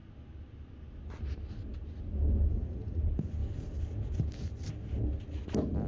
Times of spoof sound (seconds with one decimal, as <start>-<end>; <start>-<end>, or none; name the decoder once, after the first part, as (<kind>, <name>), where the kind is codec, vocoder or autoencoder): 2.5-3.0 (vocoder, Vocos)